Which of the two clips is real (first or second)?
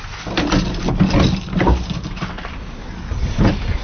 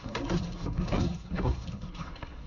first